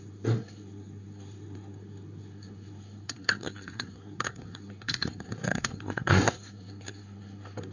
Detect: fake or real fake